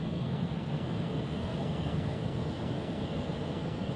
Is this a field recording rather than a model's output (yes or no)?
no